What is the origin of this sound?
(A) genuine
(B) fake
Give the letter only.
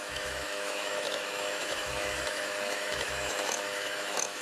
B